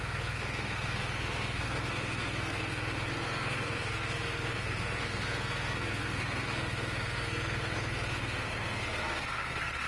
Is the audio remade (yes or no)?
yes